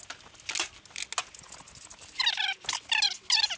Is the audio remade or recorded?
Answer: recorded